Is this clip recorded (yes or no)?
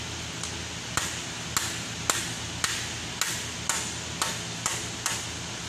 yes